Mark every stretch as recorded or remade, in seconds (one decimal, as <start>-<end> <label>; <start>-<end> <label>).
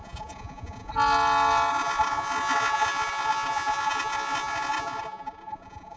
0.0-0.9 remade; 0.9-1.7 recorded; 1.7-6.0 remade